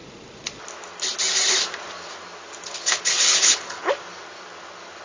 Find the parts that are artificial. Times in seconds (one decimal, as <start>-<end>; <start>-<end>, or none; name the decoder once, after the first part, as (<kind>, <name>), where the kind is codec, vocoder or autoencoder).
2.8-3.9 (codec, HILCodec)